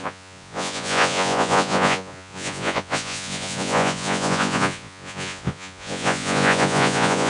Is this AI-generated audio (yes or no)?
yes